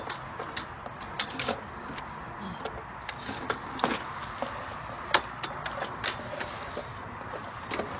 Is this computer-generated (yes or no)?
no